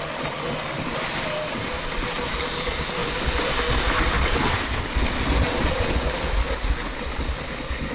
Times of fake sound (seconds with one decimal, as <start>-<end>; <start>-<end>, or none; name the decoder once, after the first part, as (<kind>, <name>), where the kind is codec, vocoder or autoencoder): none